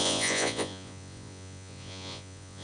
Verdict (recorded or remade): remade